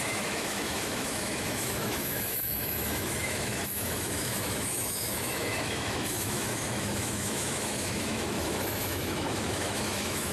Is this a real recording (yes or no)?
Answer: no